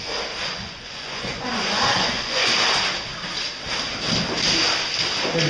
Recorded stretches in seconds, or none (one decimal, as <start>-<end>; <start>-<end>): 0.0-0.4; 2.5-5.5